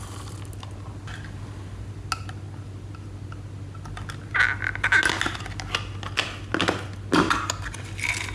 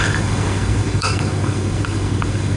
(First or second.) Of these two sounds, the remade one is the second